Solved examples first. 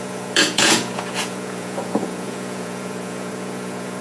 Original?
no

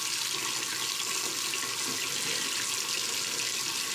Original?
yes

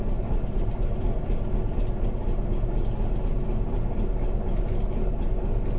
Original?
yes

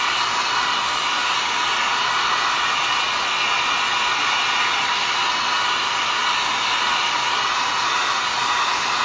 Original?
yes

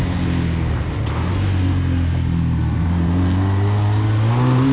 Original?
yes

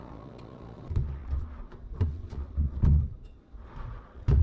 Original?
no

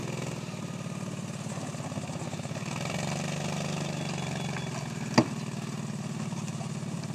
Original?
yes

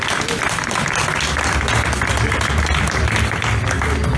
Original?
yes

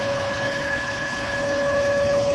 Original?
no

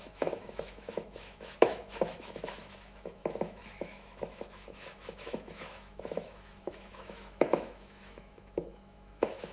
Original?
no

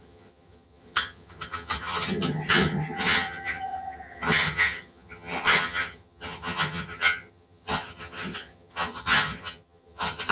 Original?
no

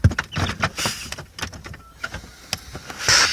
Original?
yes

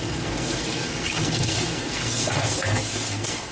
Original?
no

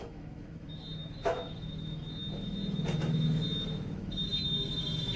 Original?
no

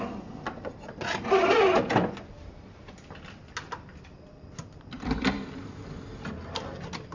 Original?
yes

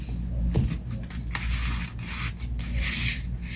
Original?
yes